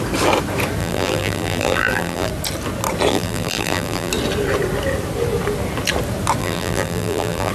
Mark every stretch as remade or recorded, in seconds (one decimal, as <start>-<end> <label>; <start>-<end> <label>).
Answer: 0.0-0.8 recorded; 0.8-2.3 remade; 2.3-3.1 recorded; 3.1-4.1 remade; 4.1-6.4 recorded; 6.4-7.5 remade